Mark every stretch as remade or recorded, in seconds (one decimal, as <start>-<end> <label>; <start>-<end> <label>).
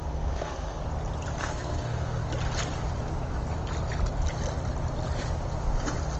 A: 0.0-0.8 remade; 0.8-1.4 recorded; 1.4-2.2 remade; 2.2-6.2 recorded